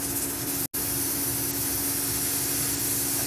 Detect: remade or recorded recorded